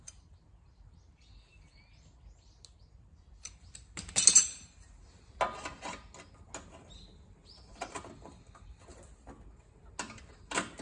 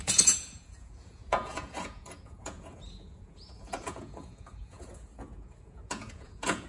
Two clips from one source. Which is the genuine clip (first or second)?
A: first